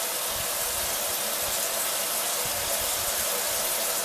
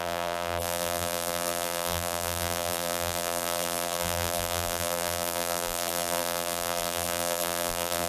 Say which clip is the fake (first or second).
second